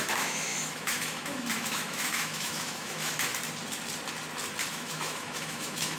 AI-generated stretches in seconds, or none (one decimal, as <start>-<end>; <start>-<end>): 0.0-3.3; 4.7-6.0